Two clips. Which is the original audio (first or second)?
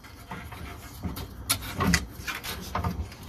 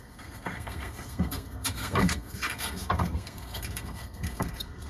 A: first